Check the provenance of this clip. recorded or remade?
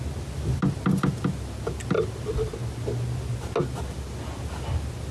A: recorded